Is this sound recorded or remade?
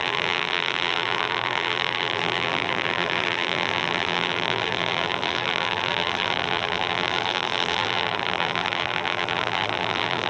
remade